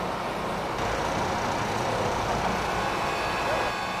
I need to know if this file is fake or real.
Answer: real